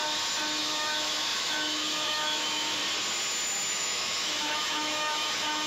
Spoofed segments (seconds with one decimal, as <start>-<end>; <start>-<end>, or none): 0.6-2.8; 3.7-5.7